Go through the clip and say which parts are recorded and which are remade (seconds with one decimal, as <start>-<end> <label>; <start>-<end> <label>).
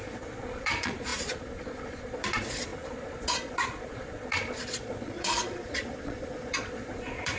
0.0-7.4 remade